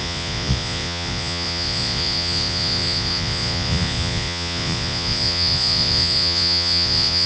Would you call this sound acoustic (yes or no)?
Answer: no